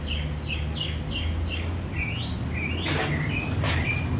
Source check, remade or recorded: recorded